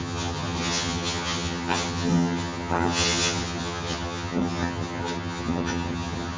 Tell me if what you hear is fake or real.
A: fake